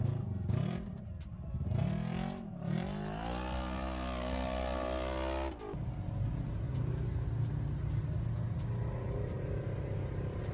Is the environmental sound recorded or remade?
recorded